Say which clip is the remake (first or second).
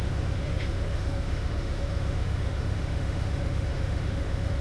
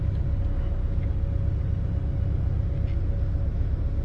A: first